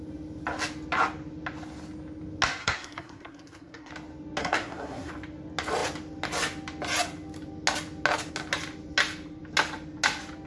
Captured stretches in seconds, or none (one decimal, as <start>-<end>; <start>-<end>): 0.0-2.6; 3.9-4.4; 5.1-10.5